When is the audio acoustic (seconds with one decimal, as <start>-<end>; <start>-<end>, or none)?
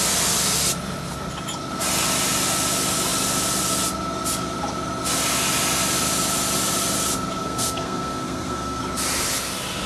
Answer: 0.0-7.4; 8.8-9.9